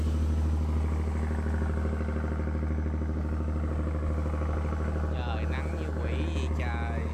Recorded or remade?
recorded